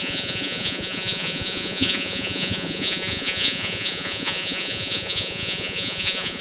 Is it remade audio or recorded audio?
remade